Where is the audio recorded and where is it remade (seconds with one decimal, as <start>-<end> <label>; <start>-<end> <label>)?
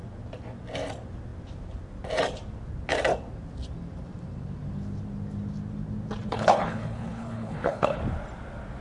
0.0-6.3 recorded; 6.3-8.0 remade; 8.0-8.8 recorded